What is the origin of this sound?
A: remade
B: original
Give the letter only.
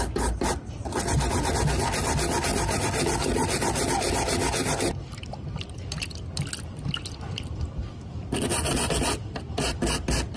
B